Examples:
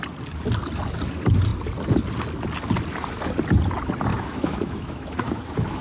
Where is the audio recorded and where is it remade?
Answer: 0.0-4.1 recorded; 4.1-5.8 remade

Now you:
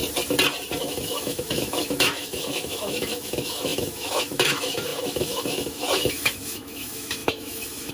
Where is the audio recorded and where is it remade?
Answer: 0.0-0.8 recorded; 0.8-7.9 remade

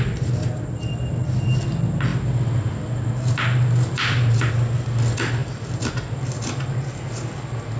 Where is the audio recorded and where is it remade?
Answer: 0.0-7.8 recorded

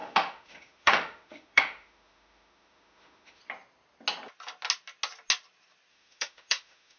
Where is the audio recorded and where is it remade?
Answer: 0.0-3.4 remade; 3.4-5.9 recorded; 5.9-7.0 remade

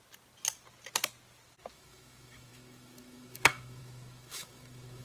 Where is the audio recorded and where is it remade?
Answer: 0.0-1.7 recorded; 1.7-5.0 remade

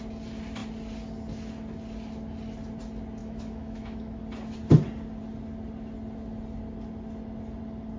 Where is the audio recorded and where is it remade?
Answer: 0.0-3.2 recorded; 3.2-4.2 remade; 4.2-8.0 recorded